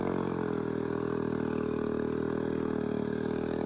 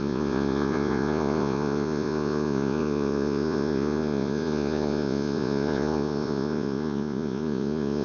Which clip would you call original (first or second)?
first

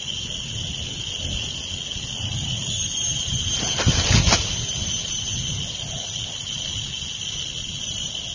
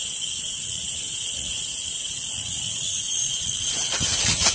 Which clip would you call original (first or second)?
first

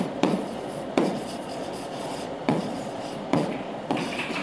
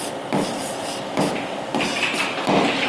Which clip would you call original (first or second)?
second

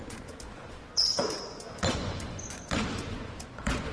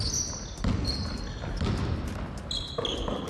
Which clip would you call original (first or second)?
second